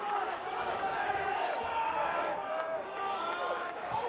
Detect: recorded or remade remade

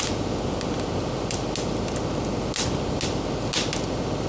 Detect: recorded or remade recorded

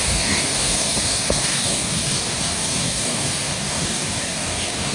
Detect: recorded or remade remade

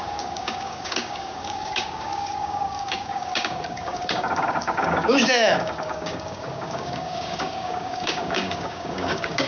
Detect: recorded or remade remade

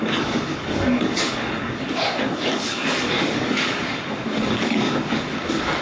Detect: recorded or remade remade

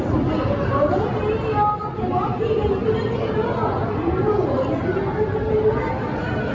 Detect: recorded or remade recorded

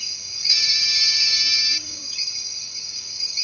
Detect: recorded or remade remade